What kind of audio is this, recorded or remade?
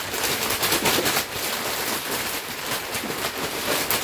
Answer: recorded